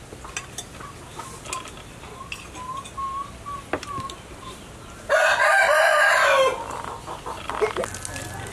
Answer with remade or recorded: recorded